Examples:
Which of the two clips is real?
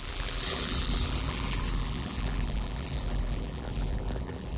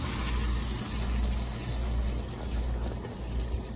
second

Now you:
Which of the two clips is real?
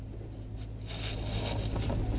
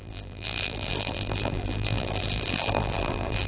first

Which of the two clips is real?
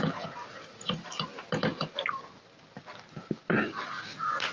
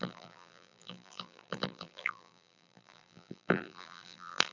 first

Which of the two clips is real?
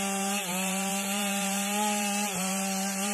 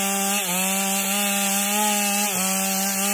second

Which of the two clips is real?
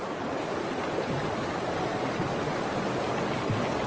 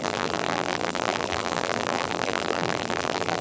first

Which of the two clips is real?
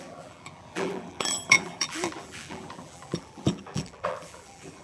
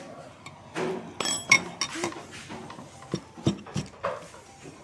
second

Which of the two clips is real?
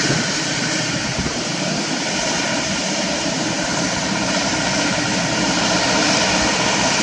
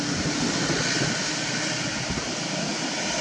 second